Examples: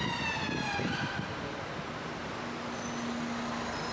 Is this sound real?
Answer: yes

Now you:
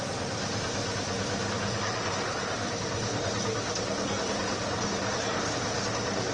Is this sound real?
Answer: no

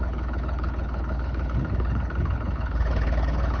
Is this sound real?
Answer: no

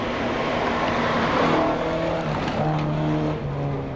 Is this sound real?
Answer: yes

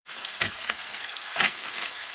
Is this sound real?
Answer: no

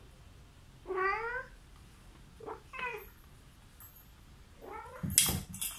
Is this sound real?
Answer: yes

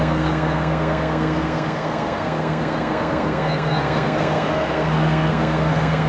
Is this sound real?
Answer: no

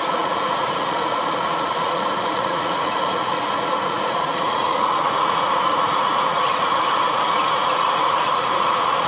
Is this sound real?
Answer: no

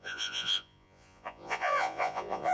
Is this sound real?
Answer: no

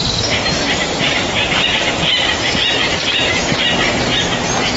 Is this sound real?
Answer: yes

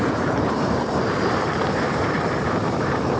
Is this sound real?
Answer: no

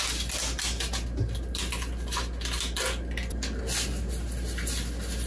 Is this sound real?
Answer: yes